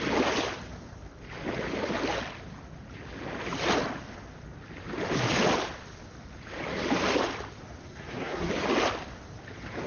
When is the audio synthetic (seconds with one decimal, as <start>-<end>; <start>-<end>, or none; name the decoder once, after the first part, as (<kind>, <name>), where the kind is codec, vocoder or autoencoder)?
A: 7.8-8.5 (codec, SNAC)